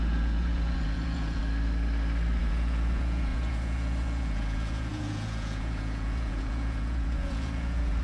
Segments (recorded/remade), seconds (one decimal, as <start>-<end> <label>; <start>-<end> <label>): 0.0-1.4 remade; 1.4-2.4 recorded; 2.4-8.0 remade